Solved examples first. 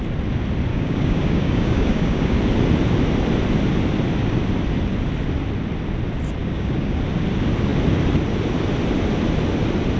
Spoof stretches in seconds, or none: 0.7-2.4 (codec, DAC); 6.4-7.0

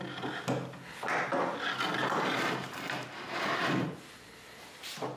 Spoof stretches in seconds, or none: 2.0-5.2 (vocoder, BigVGAN v2)

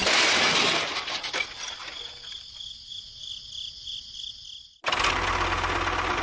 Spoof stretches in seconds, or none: none

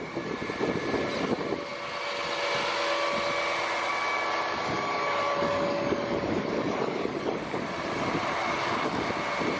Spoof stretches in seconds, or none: 4.6-7.6 (codec, DAC); 8.4-9.1

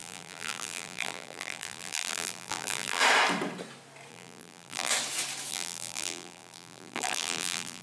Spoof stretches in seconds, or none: 0.0-3.0 (vocoder, BigVGAN v2); 4.1-4.9; 5.5-7.8

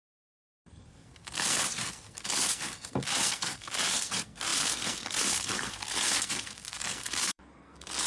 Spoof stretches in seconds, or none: 0.0-8.1 (codec, SNAC)

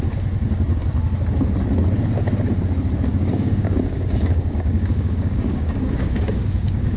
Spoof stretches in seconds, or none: 3.1-7.0 (codec, DAC)